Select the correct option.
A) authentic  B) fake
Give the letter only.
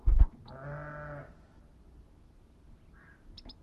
A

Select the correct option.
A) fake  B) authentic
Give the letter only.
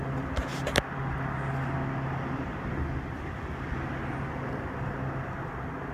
B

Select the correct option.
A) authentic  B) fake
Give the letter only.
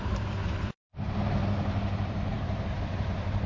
B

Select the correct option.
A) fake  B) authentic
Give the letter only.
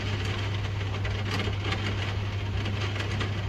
B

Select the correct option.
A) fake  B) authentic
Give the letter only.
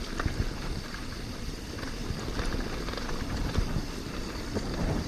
A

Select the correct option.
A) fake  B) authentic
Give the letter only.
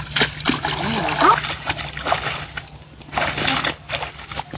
B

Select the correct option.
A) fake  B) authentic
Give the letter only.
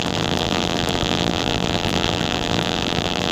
A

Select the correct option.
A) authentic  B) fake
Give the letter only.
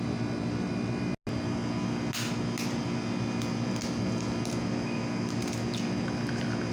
A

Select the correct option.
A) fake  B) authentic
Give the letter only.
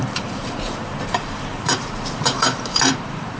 A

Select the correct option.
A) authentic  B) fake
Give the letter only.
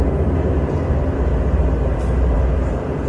B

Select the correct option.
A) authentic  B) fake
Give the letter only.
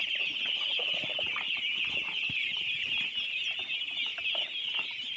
A